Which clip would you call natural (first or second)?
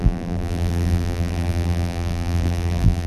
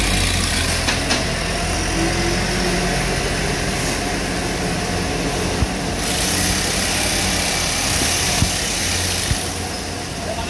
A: second